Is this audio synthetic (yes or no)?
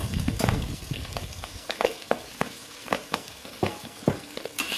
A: yes